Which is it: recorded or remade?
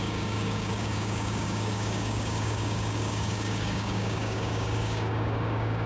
remade